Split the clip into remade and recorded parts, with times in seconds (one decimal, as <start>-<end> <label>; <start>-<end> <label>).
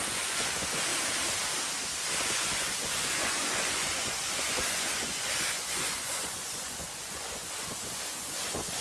0.0-0.9 remade; 0.9-2.2 recorded; 2.2-8.8 remade